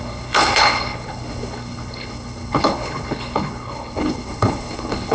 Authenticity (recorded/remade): remade